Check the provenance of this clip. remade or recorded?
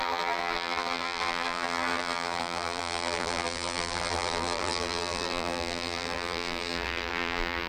remade